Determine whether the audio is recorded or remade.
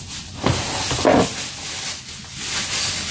recorded